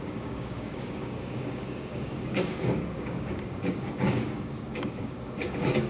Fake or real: fake